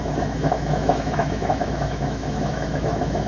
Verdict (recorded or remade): remade